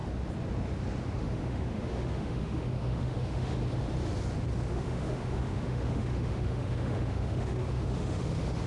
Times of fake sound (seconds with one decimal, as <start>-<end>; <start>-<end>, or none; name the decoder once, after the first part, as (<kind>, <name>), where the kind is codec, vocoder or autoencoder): 1.2-3.6 (autoencoder, DAC-VAE); 4.7-8.7